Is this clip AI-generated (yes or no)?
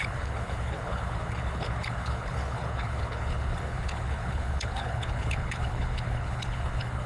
yes